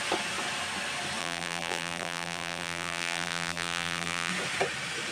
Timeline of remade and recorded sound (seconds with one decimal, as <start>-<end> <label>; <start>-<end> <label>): 0.0-1.2 recorded; 1.2-4.3 remade; 4.3-5.1 recorded